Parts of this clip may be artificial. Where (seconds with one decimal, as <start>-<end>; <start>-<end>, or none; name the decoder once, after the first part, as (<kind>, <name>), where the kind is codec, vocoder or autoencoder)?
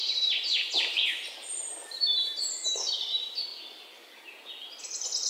0.0-2.9 (vocoder, BigVGAN v2)